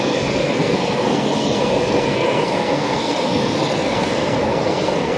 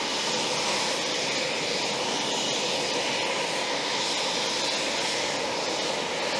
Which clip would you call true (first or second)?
second